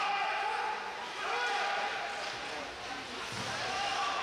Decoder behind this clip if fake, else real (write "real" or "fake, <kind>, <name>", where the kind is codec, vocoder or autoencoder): real